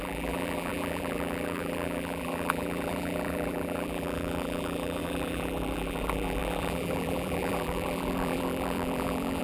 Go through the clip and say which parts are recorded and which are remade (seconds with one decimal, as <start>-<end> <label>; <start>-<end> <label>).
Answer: 0.0-9.4 remade